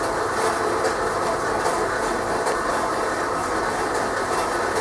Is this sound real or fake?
real